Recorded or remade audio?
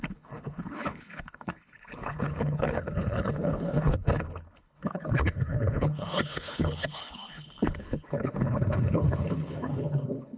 remade